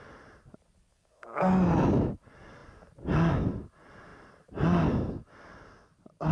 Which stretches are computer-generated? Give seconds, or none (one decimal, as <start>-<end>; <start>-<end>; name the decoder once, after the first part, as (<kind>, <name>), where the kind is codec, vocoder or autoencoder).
0.9-1.5 (codec, SNAC)